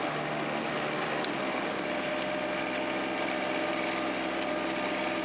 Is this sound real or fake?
real